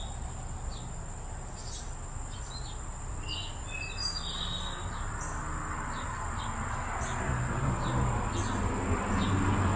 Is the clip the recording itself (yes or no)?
yes